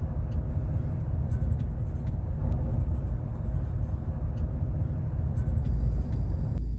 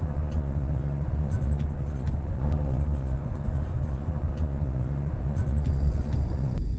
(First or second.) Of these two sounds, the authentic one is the first